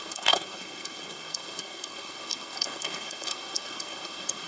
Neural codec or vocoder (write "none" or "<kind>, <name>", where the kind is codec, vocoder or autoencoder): codec, SNAC